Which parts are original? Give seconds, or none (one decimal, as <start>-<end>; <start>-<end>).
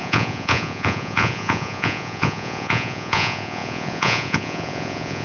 none